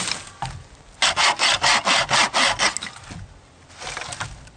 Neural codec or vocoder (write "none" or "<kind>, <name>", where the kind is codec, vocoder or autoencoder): none